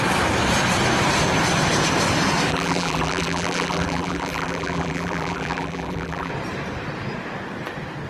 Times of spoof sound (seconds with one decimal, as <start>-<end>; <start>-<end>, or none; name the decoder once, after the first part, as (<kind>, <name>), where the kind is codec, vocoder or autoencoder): 2.5-6.3 (vocoder, BigVGAN v2)